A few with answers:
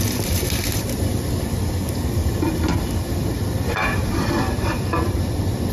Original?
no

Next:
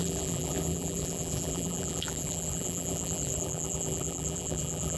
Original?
no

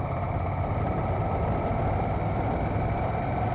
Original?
yes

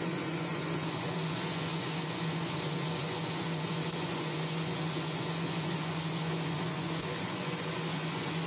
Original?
no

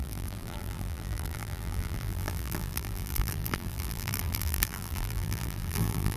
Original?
no